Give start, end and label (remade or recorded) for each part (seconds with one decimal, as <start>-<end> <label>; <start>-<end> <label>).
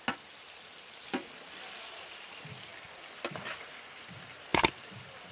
0.0-5.3 recorded